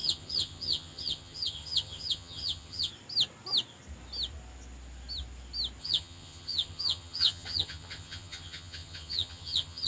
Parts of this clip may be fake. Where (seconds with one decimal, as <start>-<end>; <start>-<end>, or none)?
0.0-2.9; 5.8-9.9